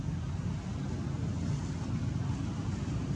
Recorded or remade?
recorded